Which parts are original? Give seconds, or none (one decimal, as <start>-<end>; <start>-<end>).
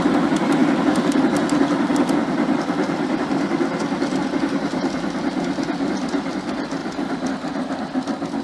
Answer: 0.0-8.4